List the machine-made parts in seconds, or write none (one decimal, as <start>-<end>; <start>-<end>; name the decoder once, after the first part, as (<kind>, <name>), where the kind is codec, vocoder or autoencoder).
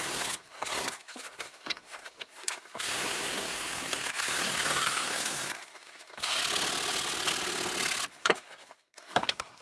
0.0-6.4 (codec, SNAC); 8.1-9.6